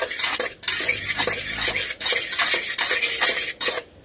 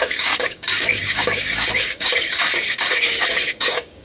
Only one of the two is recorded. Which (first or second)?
first